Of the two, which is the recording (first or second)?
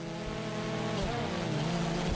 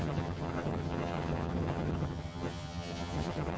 first